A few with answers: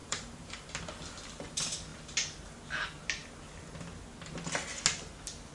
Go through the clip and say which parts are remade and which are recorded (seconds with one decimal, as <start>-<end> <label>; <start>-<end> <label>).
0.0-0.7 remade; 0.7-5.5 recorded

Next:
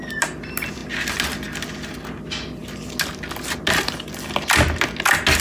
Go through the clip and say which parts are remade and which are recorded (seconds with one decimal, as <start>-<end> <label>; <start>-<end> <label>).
0.0-5.4 recorded

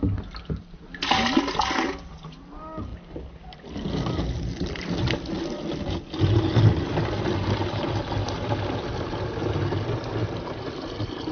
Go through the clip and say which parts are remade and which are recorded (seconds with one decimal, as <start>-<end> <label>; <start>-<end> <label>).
0.0-11.3 recorded